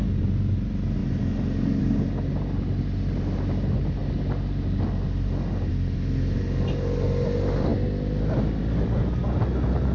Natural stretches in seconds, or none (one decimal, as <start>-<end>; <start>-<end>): 0.0-9.9